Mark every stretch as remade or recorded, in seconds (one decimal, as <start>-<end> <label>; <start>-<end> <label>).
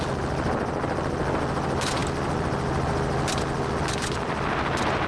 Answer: 0.0-5.1 recorded